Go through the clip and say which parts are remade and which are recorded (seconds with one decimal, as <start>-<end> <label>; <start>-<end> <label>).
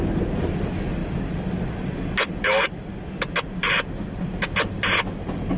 0.0-5.6 recorded